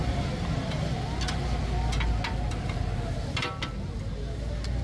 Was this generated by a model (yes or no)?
no